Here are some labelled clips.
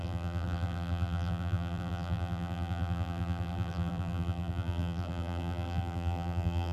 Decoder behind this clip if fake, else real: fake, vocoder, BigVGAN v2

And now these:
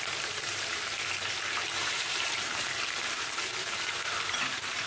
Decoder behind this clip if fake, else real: fake, vocoder, BigVGAN v2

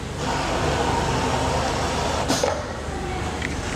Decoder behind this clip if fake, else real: real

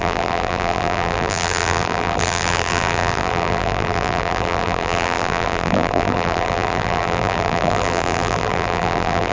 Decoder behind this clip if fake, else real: fake, vocoder, BigVGAN v2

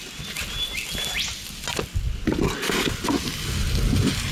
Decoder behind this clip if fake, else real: real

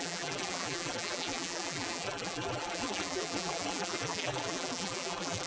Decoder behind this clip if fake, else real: fake, vocoder, BigVGAN v2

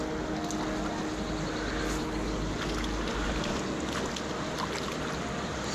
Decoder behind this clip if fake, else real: real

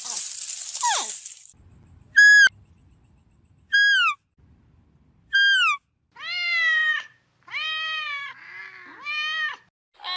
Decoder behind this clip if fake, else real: real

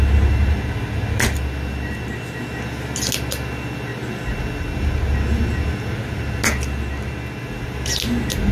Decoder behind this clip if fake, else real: real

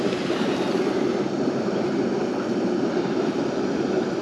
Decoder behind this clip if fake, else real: real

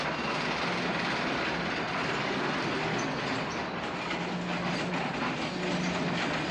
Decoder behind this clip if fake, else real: real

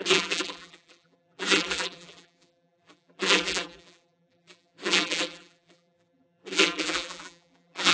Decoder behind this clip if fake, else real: fake, vocoder, BigVGAN v2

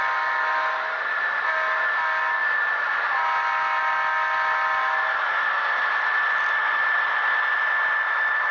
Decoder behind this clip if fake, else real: real